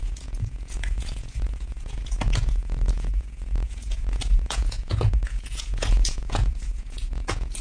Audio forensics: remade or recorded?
remade